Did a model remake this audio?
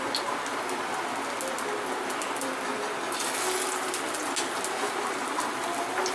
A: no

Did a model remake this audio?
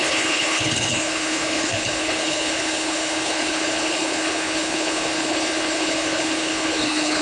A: yes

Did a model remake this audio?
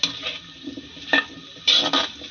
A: no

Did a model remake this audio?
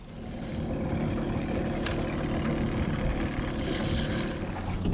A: no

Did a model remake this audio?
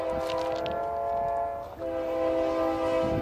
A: no